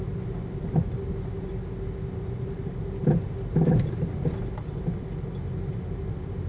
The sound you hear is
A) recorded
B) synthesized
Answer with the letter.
A